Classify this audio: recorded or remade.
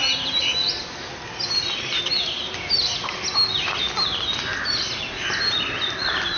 recorded